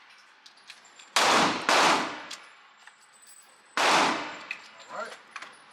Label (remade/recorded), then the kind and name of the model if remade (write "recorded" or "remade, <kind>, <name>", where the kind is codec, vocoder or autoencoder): recorded